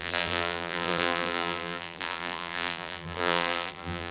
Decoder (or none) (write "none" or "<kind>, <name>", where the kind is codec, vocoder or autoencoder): vocoder, BigVGAN v2